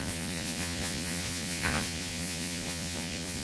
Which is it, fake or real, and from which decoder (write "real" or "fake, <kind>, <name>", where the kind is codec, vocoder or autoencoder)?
fake, vocoder, Vocos